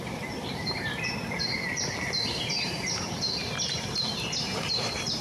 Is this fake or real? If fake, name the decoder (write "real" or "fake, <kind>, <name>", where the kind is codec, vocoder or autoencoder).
fake, vocoder, BigVGAN v2